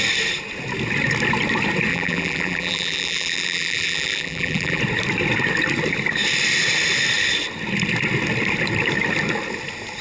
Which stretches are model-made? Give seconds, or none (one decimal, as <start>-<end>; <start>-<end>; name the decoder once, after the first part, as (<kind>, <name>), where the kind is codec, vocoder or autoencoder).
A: 1.9-4.8 (vocoder, BigVGAN v2)